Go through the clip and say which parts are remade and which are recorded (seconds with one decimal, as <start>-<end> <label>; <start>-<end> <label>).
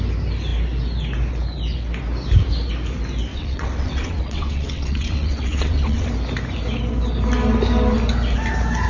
0.0-3.3 recorded; 3.3-6.1 remade; 6.1-8.9 recorded